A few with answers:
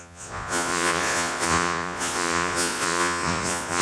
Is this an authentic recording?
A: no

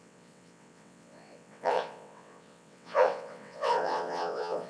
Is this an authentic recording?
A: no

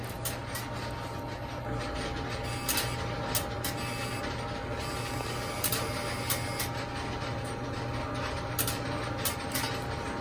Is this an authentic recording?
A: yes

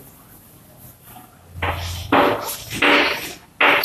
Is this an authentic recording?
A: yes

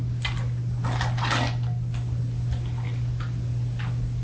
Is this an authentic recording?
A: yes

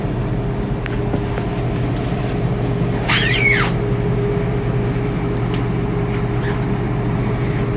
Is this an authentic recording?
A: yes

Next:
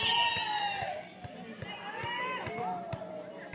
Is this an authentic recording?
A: yes